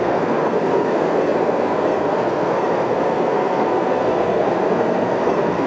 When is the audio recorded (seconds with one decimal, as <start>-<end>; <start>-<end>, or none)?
none